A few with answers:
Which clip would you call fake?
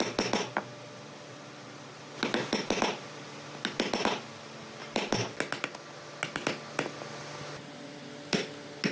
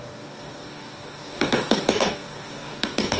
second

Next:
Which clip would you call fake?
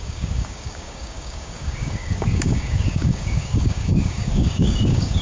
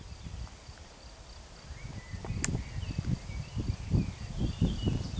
first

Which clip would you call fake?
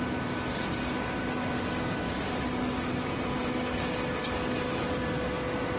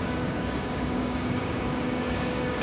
second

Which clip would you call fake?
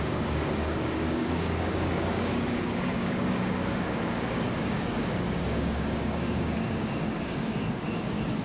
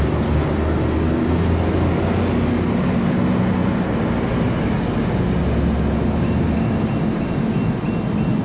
first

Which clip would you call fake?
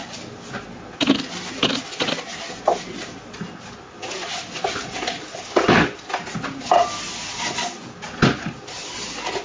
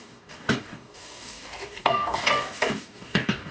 second